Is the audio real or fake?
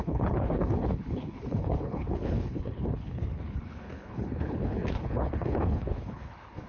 fake